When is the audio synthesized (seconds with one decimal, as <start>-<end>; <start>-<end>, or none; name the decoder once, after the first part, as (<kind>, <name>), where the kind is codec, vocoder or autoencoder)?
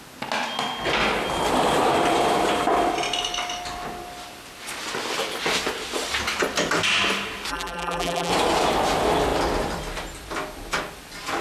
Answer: 7.5-8.3 (vocoder, BigVGAN v2)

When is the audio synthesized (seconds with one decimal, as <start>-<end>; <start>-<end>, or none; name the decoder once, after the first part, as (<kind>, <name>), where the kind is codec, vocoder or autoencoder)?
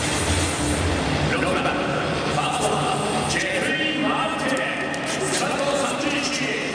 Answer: none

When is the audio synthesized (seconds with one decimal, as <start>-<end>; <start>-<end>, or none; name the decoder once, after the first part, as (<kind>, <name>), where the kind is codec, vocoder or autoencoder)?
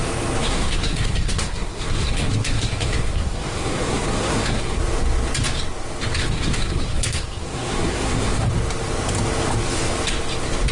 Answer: 0.4-4.8 (codec, SNAC); 6.2-8.5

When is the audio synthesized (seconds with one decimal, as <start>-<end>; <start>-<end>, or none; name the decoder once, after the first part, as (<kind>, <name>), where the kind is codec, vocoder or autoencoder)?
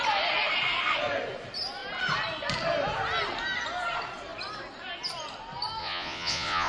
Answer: 5.8-6.7 (vocoder, Vocos)